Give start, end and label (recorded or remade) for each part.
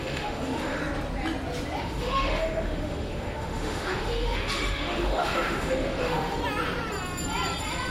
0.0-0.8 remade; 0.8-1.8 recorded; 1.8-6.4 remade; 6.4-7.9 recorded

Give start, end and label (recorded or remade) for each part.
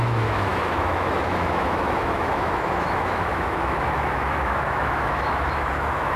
0.0-6.2 remade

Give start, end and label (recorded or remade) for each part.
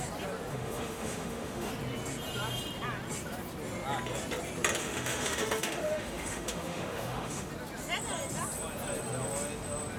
0.0-0.5 recorded; 0.5-1.7 remade; 1.7-4.8 recorded; 4.8-7.5 remade; 7.5-10.0 recorded